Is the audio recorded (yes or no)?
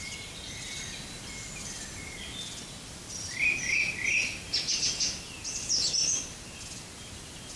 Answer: yes